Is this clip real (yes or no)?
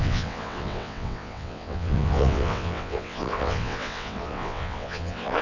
no